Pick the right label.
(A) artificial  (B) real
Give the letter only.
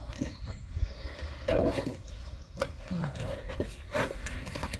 A